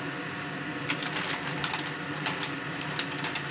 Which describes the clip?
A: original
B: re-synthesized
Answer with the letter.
A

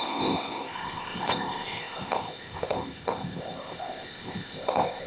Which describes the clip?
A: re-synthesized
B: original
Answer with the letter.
A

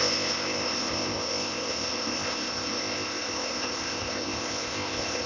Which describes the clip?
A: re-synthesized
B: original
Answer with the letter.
A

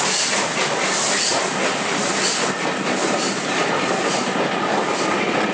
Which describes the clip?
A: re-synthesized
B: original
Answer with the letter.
B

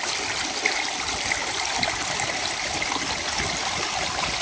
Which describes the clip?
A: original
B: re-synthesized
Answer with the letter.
A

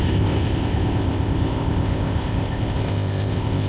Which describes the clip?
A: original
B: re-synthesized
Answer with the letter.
B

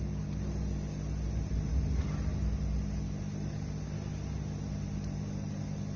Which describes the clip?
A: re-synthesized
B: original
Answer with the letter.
B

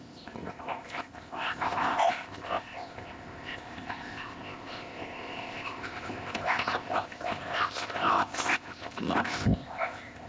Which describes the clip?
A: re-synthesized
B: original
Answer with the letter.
A